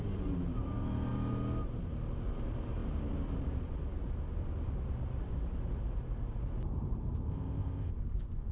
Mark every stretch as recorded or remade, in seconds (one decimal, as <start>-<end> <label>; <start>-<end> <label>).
0.0-7.3 recorded; 7.3-7.9 remade; 7.9-8.5 recorded